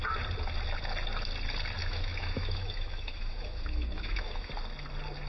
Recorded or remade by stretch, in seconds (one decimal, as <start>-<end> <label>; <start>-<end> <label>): 0.0-1.8 recorded; 1.8-4.5 remade; 4.5-5.3 recorded